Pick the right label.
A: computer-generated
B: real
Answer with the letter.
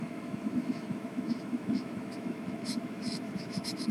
A